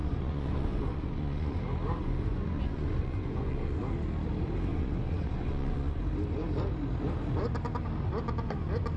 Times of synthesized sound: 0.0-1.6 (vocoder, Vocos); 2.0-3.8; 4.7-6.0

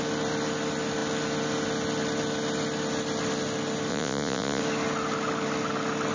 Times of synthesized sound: 3.9-4.6 (vocoder, Vocos)

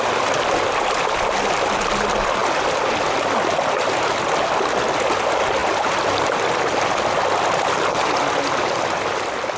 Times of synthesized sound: none

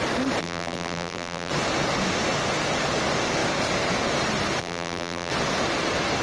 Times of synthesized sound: 0.4-1.5 (vocoder, BigVGAN v2); 4.6-5.3

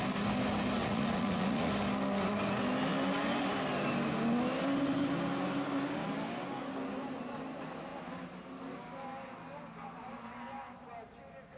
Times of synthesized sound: 0.8-1.7 (vocoder, Vocos)

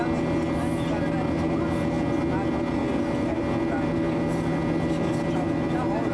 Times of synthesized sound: none

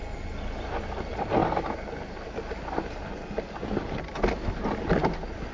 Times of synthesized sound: none

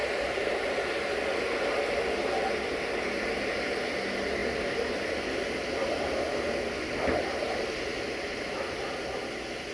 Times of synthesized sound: 0.0-1.0 (vocoder, BigVGAN v2)